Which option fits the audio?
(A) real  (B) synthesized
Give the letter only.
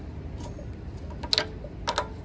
A